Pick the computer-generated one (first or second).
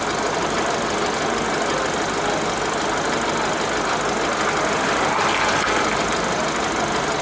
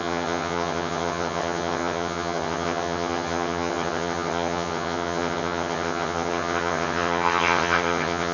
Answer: second